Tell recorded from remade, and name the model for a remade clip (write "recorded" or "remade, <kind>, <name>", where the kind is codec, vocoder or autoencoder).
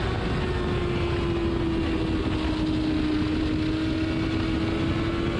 recorded